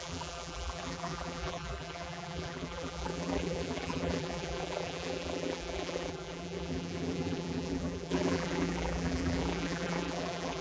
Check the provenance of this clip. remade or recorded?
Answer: remade